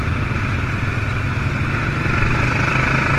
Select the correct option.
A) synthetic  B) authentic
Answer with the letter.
B